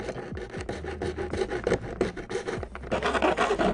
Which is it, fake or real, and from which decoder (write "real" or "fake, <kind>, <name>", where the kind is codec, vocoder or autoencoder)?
real